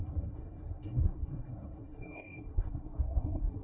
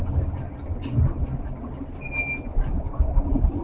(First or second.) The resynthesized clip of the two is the first